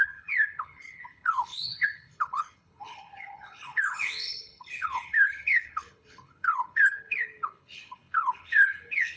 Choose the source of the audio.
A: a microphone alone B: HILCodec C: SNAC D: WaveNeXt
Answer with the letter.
B